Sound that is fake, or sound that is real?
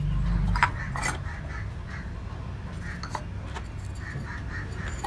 real